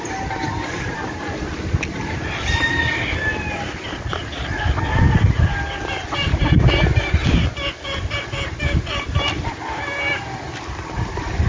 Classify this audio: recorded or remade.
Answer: recorded